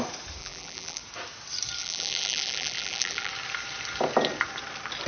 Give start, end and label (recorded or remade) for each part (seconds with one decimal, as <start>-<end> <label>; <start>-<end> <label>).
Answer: 0.0-0.4 recorded; 0.4-1.0 remade; 1.0-1.8 recorded; 1.8-3.3 remade; 3.3-5.1 recorded